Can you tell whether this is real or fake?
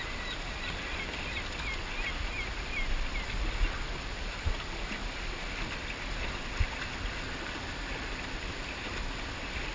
real